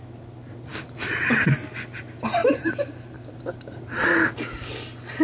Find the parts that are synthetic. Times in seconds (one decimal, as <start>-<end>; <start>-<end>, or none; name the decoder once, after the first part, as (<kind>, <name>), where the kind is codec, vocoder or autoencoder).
none

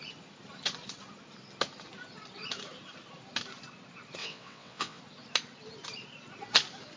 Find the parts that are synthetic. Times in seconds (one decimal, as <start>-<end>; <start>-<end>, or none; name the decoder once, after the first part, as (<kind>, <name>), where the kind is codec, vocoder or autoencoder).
4.2-5.0 (vocoder, WaveNeXt)

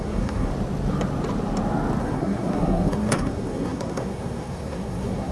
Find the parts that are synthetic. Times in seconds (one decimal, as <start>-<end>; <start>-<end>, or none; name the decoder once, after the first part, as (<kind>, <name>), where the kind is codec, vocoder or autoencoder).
0.0-0.5 (codec, SNAC); 2.0-5.3

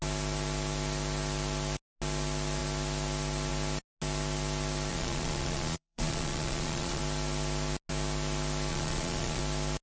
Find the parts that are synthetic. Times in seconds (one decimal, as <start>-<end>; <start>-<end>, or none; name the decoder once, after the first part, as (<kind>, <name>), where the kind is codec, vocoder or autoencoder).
4.9-7.0 (vocoder, Vocos); 8.7-9.4